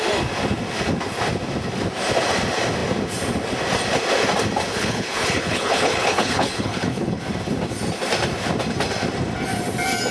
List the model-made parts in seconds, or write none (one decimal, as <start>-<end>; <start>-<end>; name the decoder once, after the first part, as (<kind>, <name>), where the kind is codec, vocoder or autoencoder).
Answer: 4.7-7.2 (codec, HILCodec)